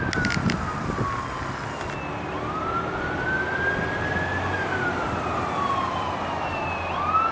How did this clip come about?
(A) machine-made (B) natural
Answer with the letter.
B